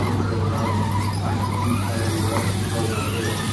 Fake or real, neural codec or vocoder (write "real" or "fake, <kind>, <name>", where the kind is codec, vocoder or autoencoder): real